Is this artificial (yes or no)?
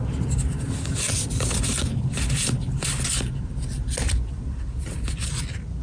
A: no